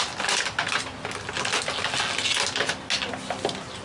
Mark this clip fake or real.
real